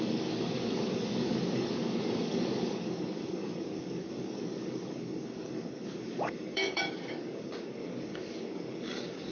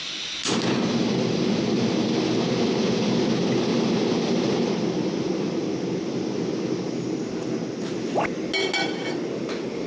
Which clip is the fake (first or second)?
first